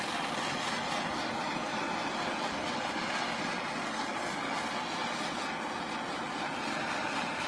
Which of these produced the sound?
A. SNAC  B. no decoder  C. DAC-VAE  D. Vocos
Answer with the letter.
B